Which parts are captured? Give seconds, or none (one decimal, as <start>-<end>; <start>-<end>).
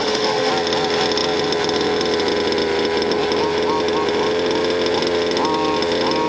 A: 0.5-6.3